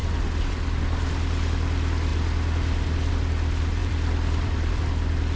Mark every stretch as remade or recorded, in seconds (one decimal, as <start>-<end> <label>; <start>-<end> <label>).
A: 0.0-3.8 recorded; 3.8-4.8 remade; 4.8-5.4 recorded